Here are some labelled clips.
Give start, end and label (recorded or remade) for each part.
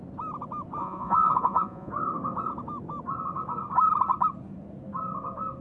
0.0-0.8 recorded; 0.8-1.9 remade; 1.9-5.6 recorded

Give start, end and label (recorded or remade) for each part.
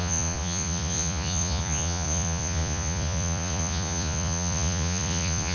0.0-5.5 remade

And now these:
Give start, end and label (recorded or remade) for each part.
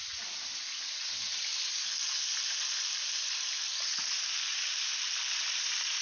0.0-6.0 recorded